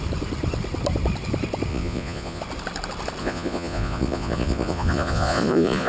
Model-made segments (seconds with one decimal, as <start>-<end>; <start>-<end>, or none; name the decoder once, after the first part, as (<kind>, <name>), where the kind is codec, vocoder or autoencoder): 1.7-2.4 (vocoder, Vocos); 3.2-5.9